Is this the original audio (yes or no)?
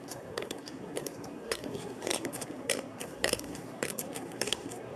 no